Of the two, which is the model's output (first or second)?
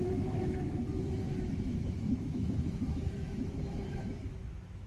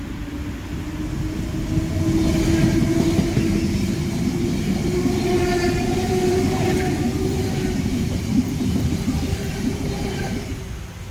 first